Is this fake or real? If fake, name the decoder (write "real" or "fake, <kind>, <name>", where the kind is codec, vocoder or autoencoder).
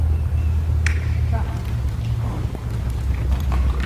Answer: real